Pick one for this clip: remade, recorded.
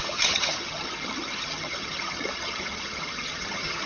remade